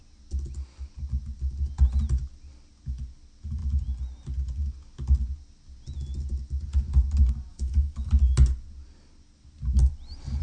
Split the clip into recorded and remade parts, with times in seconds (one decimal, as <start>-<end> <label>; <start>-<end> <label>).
0.0-7.5 recorded; 7.5-8.1 remade; 8.1-10.4 recorded